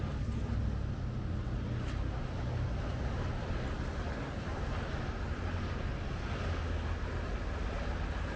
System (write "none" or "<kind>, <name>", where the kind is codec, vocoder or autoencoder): none